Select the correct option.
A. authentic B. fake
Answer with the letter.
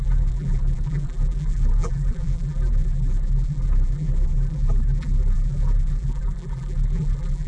B